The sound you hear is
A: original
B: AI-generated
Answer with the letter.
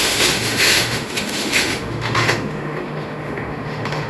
B